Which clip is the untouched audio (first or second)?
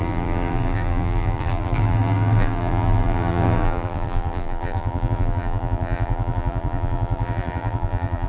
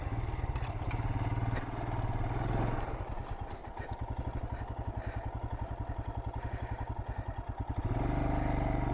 second